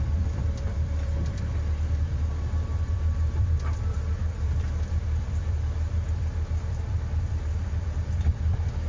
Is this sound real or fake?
fake